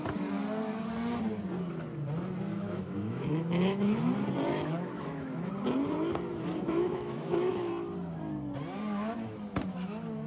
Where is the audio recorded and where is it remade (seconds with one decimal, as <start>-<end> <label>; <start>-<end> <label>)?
0.0-2.5 recorded; 2.5-4.0 remade; 4.0-4.5 recorded; 4.5-5.5 remade; 5.5-6.3 recorded; 6.3-7.7 remade; 7.7-10.3 recorded